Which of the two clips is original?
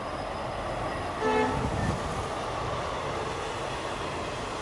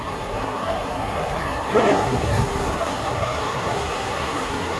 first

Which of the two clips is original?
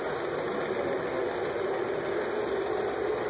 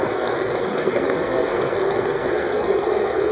first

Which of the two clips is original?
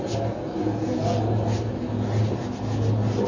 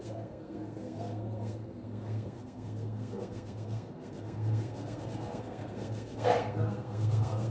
first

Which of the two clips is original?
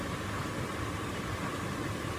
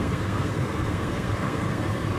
first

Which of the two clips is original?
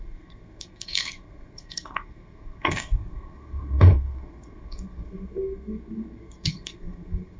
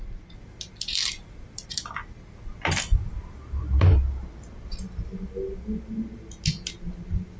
second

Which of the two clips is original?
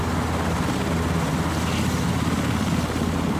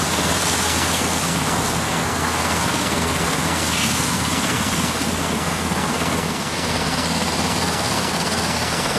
first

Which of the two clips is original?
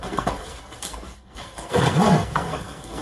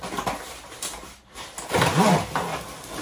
second